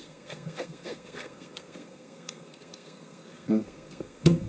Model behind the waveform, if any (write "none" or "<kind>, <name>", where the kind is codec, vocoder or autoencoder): codec, SNAC